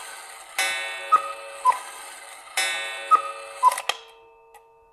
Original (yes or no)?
yes